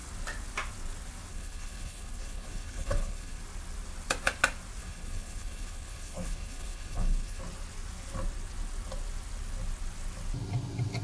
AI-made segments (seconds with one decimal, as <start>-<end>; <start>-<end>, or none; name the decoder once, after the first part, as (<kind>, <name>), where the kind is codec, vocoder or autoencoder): 1.3-3.4 (codec, HILCodec); 4.8-7.4